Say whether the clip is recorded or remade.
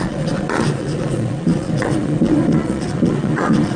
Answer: remade